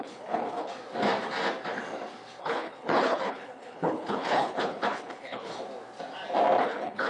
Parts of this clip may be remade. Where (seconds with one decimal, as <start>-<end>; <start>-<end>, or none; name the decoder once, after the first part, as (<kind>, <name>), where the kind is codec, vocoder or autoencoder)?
0.0-0.7 (codec, HILCodec); 2.4-5.5; 6.6-7.1